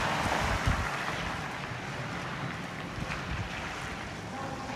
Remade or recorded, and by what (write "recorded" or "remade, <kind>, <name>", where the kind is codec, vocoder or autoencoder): recorded